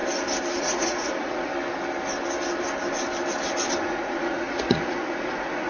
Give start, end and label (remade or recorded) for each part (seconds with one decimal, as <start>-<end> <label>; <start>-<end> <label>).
0.0-0.6 recorded; 0.6-1.5 remade; 1.5-3.8 recorded; 3.8-5.7 remade